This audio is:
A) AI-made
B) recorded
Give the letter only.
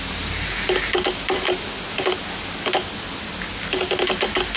B